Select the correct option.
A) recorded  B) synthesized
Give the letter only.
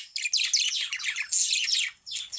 A